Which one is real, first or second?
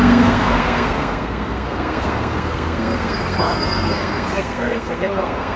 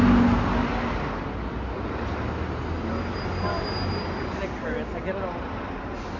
second